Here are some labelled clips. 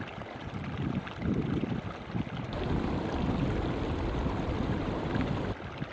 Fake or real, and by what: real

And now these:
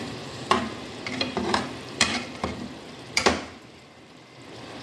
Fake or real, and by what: fake, vocoder, BigVGAN v2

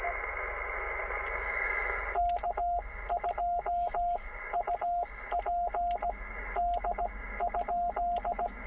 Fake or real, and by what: real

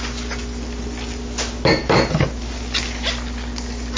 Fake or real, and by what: real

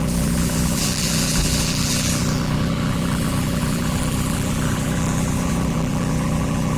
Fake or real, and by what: fake, vocoder, BigVGAN v2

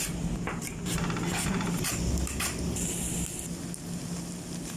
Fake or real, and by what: real